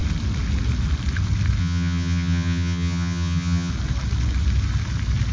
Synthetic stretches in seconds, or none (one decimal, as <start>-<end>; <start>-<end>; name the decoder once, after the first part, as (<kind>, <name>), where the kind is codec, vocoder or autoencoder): 1.6-3.7 (vocoder, HiFi-GAN)